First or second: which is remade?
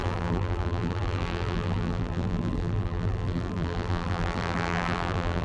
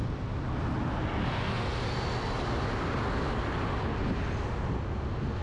first